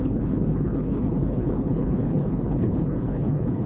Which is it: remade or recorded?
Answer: remade